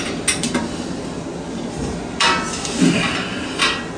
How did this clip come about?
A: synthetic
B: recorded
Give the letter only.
B